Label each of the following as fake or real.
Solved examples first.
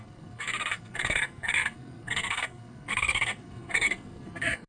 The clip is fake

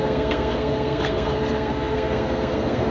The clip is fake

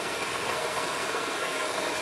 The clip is fake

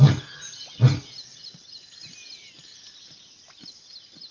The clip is real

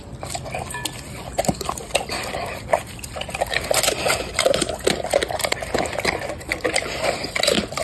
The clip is real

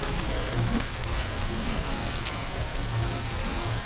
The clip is fake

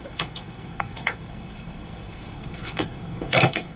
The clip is fake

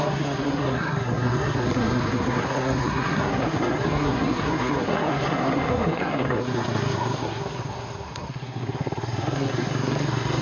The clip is fake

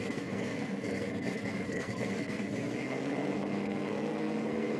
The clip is fake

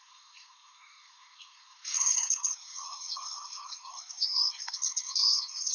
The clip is fake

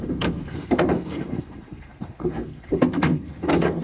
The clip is fake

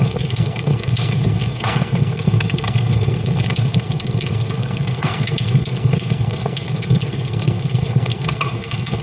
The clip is fake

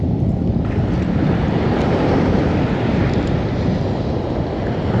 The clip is real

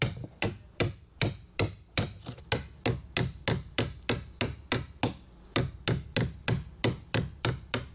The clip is real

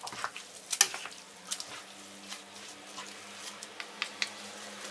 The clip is real